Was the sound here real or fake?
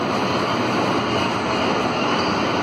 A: real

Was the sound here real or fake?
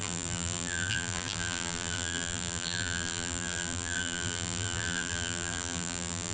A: fake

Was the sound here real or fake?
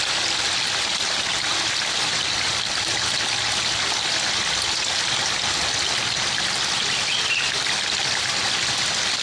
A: real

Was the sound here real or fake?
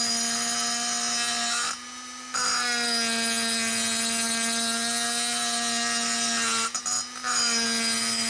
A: real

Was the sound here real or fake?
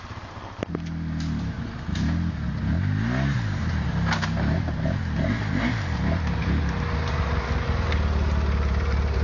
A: real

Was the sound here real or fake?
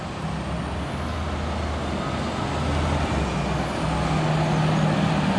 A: real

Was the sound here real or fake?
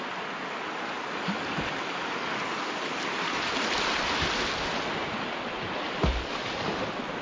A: real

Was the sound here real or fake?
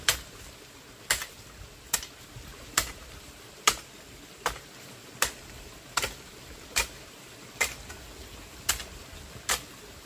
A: real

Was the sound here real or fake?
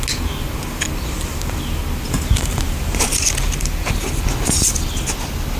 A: real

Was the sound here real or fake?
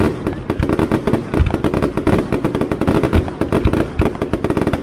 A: real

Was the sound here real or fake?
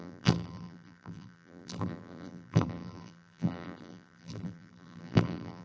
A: fake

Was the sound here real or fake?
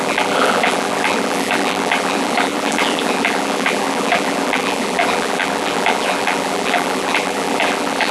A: fake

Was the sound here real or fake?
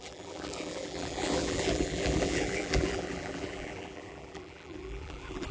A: fake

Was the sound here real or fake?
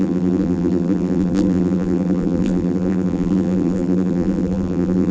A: fake